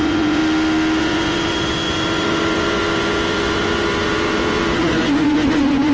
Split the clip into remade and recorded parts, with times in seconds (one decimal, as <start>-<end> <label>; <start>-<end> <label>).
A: 0.0-0.4 remade; 0.4-1.0 recorded; 1.0-5.9 remade